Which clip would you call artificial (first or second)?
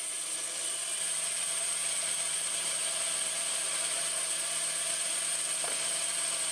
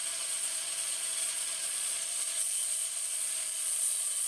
second